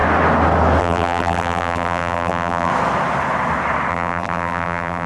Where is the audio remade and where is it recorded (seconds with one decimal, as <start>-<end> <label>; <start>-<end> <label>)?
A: 0.0-0.8 recorded; 0.8-2.7 remade; 2.7-3.9 recorded; 3.9-5.1 remade